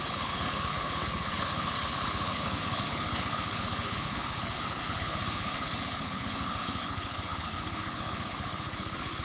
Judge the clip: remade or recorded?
remade